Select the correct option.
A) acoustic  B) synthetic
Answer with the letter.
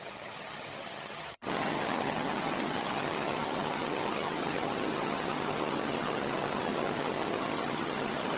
B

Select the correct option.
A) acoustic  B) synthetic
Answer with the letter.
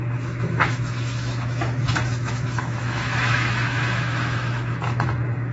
B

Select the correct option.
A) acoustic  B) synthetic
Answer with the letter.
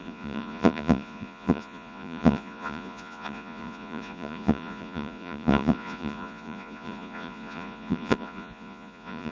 B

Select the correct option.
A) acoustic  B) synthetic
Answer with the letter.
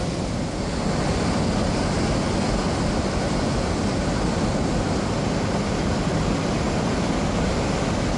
A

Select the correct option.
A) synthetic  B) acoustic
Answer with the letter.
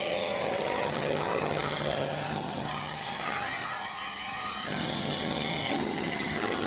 A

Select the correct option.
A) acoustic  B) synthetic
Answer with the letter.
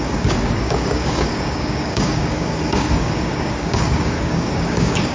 B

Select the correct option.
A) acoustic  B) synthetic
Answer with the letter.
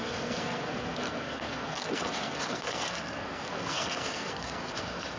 B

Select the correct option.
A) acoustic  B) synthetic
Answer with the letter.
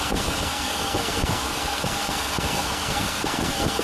B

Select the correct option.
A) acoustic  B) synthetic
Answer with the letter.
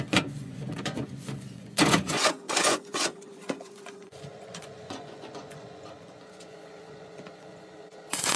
B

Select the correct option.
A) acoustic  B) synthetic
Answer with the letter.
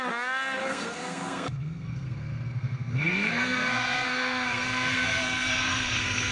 B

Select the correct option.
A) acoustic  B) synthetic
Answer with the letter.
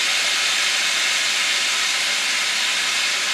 A